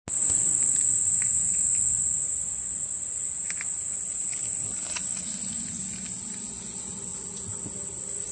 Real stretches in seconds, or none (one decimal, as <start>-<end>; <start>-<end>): 0.0-4.5; 5.6-8.3